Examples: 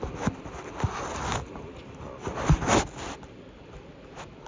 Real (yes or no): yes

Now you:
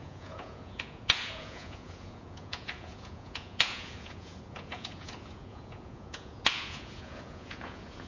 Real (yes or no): no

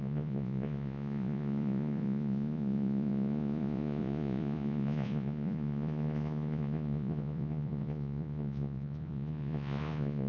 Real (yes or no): no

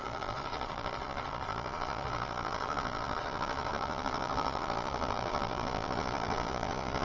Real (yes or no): no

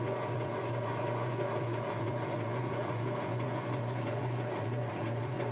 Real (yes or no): no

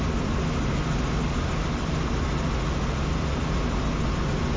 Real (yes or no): yes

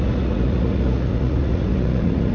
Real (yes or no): no